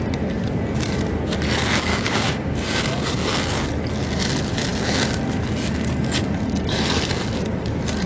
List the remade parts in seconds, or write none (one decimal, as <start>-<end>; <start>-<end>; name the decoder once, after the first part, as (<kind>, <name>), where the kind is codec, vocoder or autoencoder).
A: 1.9-2.8 (codec, DAC)